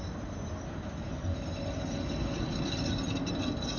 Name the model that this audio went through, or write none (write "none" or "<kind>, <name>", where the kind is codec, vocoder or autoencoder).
none